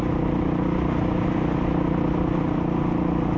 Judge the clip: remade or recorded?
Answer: recorded